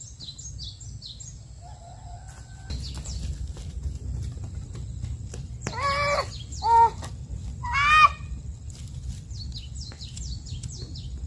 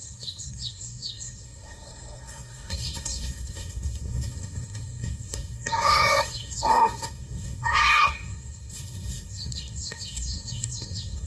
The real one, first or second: first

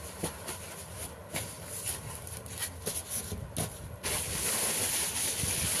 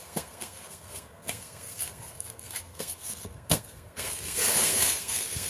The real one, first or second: first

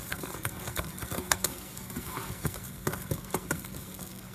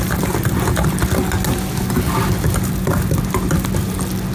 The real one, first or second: second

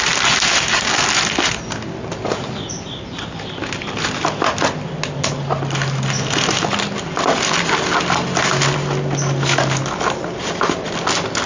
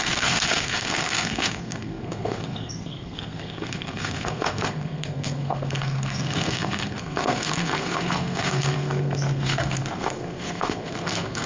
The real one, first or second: first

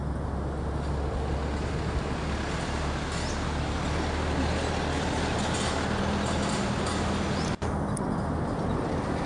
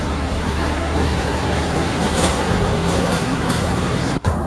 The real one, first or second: first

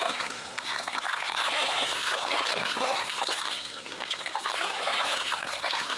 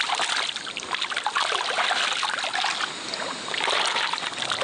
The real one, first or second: second